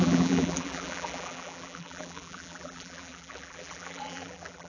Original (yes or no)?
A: no